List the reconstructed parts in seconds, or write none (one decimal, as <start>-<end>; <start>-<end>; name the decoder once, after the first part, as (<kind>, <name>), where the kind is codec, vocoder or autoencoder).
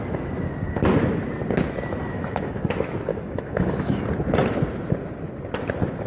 2.0-2.6 (autoencoder, DAC-VAE); 3.1-4.0